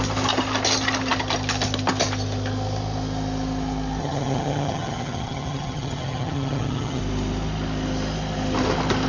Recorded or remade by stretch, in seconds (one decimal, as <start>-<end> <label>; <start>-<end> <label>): 0.0-4.0 recorded; 4.0-7.0 remade; 7.0-9.1 recorded